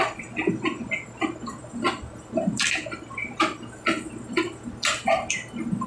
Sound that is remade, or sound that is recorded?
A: recorded